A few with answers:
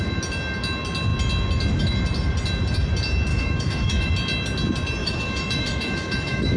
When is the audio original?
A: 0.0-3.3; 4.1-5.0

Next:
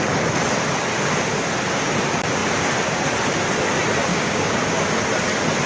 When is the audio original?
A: 0.0-4.1; 4.8-5.7